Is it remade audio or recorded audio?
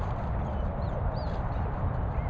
recorded